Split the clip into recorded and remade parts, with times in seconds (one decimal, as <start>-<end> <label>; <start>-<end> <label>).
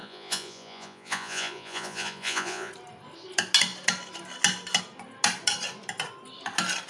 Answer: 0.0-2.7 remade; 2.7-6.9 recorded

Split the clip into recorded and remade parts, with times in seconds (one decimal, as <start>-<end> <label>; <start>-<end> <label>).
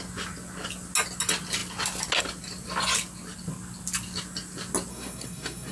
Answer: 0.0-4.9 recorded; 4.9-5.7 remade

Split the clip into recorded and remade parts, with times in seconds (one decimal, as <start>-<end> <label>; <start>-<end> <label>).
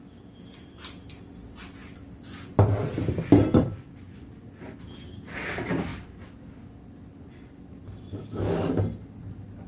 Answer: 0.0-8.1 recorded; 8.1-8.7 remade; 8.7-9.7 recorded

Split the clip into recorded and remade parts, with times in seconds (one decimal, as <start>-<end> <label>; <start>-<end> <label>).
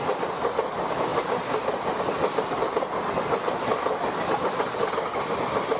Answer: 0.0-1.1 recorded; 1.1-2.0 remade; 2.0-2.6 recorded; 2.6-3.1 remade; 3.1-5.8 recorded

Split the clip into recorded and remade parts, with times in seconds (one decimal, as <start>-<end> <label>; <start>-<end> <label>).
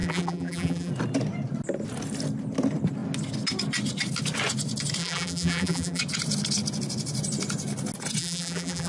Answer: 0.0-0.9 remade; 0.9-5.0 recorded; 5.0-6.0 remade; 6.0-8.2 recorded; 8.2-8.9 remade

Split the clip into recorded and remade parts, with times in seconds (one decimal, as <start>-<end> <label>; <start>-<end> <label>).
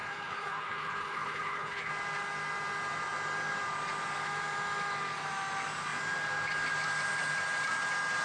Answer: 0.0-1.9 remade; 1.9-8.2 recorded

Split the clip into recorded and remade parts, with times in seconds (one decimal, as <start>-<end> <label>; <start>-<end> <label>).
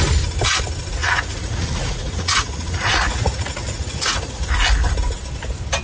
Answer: 0.0-1.0 recorded; 1.0-4.5 remade; 4.5-5.8 recorded